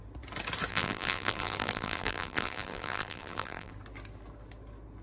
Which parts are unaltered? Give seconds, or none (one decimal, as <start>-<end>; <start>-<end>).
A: 0.0-0.7; 3.7-5.0